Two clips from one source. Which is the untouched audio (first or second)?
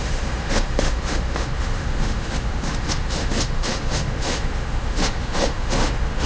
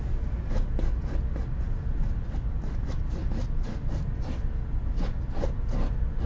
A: second